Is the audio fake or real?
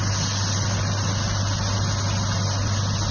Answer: real